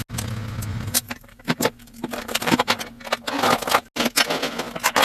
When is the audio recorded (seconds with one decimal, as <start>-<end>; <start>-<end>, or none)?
0.0-0.7; 2.8-5.0

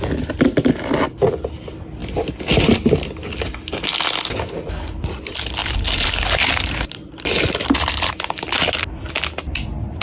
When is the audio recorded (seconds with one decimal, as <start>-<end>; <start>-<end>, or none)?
0.0-5.6; 7.9-10.0

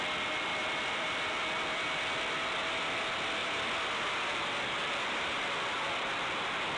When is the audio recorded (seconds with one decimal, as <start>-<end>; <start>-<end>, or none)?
0.0-3.4; 4.3-6.8

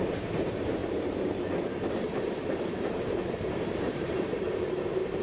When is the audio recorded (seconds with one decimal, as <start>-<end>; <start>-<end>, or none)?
0.8-1.9; 2.4-3.0